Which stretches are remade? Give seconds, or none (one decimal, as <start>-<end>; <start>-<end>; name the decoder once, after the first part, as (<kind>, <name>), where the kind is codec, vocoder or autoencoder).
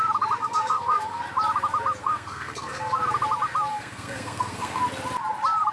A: 0.4-1.2 (codec, SNAC); 2.0-3.0; 3.7-4.8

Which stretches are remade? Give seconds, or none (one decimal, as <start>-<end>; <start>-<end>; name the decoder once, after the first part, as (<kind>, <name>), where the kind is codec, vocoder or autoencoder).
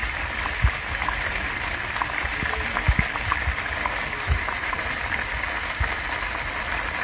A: none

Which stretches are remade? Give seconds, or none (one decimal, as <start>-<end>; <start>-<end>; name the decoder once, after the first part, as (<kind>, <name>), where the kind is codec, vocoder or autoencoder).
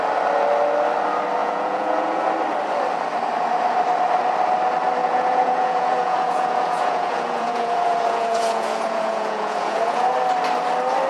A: 1.4-2.3 (vocoder, Vocos); 5.0-10.1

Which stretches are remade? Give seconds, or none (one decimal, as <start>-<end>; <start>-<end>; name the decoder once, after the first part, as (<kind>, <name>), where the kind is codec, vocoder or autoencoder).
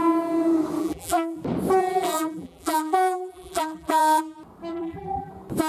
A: 0.8-1.4 (vocoder, BigVGAN v2); 1.8-4.2; 4.7-5.3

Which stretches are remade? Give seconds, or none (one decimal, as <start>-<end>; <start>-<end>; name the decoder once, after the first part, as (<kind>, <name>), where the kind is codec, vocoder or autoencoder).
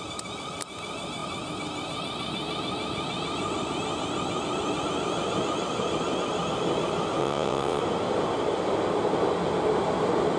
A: 7.2-7.8 (vocoder, WaveNeXt)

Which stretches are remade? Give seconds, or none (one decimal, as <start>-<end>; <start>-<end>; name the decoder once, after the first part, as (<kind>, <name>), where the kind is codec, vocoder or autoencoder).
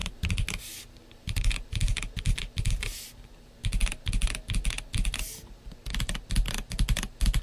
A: none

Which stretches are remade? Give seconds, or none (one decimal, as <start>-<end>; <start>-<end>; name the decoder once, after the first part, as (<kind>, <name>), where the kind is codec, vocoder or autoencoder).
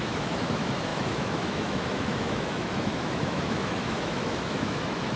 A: 0.0-5.2 (autoencoder, DAC-VAE)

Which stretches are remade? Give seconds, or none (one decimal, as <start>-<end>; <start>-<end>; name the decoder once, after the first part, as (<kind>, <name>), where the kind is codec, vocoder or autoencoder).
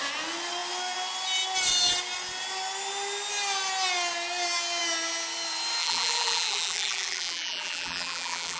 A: 5.8-8.6 (vocoder, BigVGAN v2)